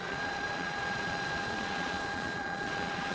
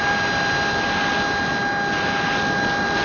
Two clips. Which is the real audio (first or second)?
second